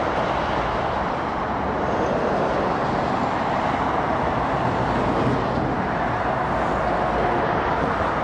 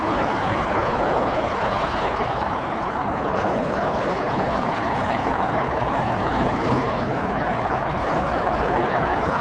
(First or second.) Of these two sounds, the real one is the first